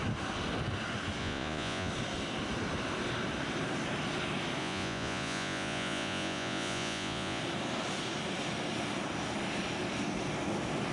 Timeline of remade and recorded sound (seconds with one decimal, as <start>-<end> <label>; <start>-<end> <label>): 0.0-1.2 recorded; 1.2-1.9 remade; 1.9-4.6 recorded; 4.6-7.4 remade; 7.4-10.9 recorded